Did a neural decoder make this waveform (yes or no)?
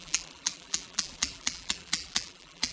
yes